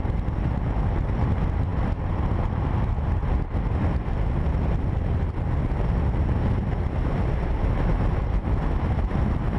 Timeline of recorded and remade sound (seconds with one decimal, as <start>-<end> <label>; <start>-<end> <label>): 0.0-9.6 recorded